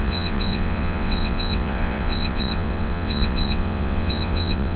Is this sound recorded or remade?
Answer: remade